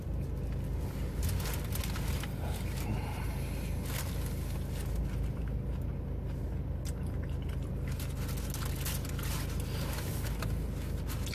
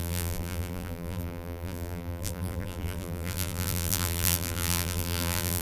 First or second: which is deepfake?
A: second